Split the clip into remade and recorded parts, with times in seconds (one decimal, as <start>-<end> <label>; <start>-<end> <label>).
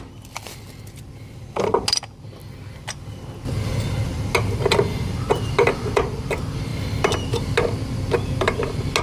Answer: 0.0-9.0 recorded